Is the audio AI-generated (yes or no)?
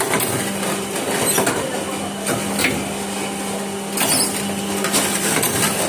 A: no